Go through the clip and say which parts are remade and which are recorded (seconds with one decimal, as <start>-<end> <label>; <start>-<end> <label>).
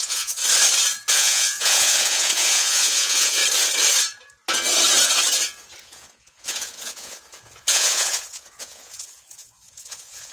0.0-0.4 remade; 0.4-1.1 recorded; 1.1-3.4 remade; 3.4-5.8 recorded; 5.8-10.3 remade